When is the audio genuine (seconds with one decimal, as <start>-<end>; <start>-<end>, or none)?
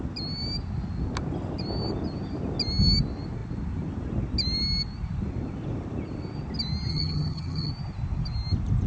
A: 0.0-6.9; 7.7-8.9